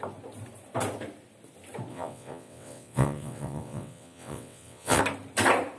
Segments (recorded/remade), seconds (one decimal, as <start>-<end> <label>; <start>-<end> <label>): 0.0-1.9 recorded; 1.9-5.0 remade; 5.0-5.8 recorded

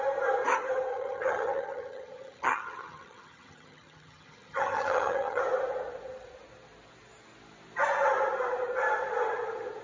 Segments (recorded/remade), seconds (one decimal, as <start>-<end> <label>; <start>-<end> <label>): 0.0-0.9 recorded; 0.9-5.4 remade; 5.4-9.8 recorded

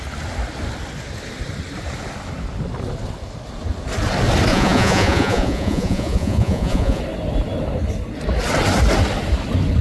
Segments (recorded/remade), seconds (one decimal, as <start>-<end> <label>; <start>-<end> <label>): 0.0-4.5 recorded; 4.5-7.0 remade; 7.0-9.8 recorded

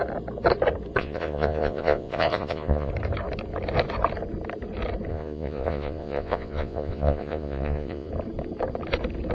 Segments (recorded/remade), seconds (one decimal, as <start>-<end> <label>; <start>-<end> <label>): 0.0-1.0 recorded; 1.0-2.9 remade; 2.9-5.1 recorded; 5.1-8.1 remade; 8.1-9.3 recorded

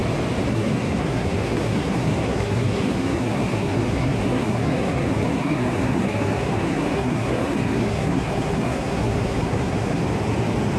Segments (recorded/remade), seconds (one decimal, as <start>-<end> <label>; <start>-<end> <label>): 0.0-0.5 recorded; 0.5-10.0 remade; 10.0-10.8 recorded

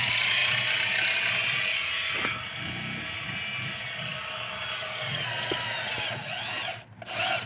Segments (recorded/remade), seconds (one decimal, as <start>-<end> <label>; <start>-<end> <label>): 0.0-7.5 recorded